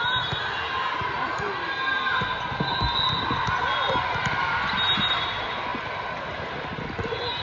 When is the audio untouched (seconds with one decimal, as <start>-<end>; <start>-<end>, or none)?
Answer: 0.0-7.4